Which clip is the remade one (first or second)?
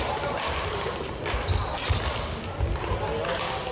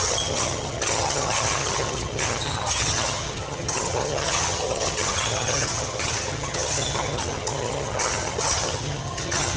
second